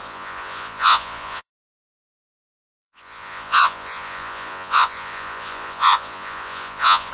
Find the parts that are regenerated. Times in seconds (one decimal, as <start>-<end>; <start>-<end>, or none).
0.0-1.5; 2.8-7.1